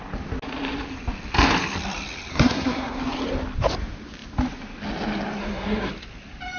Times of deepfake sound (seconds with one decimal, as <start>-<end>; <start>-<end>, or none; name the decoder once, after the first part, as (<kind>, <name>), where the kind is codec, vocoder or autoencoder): 2.3-3.0 (codec, SNAC); 5.4-5.9